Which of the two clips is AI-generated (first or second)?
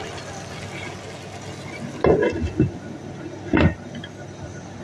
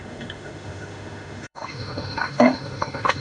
second